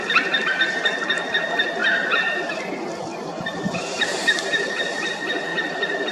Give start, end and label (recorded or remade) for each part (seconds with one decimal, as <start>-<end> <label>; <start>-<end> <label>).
0.0-3.1 recorded; 3.1-5.1 remade; 5.1-5.5 recorded; 5.5-6.1 remade